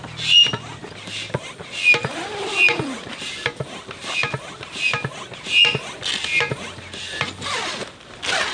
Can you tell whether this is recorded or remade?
recorded